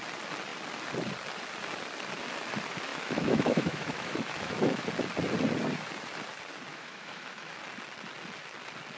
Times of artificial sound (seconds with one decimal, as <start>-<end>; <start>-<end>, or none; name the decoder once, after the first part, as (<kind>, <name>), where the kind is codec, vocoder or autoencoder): 2.9-4.9 (autoencoder, DAC-VAE); 6.7-7.6